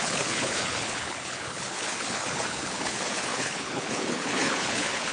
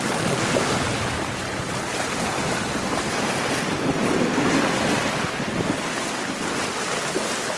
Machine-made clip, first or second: first